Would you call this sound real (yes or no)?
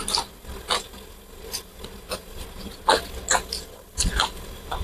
yes